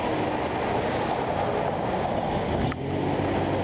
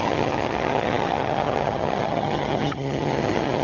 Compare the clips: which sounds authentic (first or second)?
first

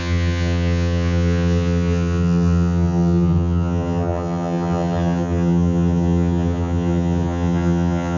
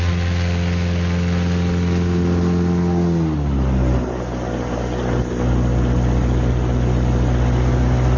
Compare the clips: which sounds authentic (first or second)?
second